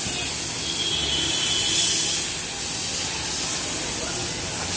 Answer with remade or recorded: recorded